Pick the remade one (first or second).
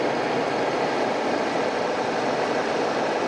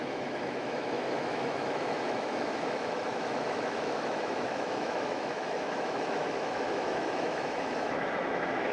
second